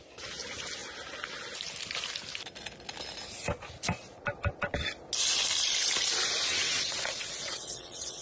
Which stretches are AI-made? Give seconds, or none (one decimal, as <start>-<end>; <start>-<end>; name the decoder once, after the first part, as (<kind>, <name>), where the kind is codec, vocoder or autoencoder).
6.5-8.2 (vocoder, WaveNeXt)